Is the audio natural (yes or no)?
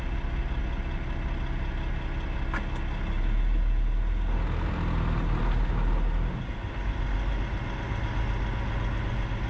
yes